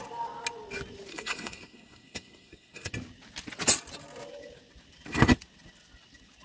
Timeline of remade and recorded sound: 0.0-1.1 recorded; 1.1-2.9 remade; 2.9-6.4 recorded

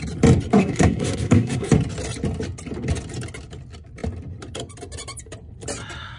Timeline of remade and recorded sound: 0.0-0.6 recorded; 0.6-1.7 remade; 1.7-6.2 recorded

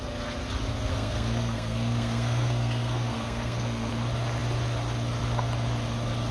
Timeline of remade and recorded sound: 0.0-0.9 recorded; 0.9-3.9 remade; 3.9-6.3 recorded

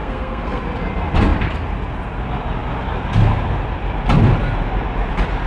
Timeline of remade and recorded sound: 0.0-0.6 remade; 0.6-5.5 recorded